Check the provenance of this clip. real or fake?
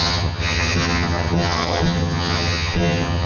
fake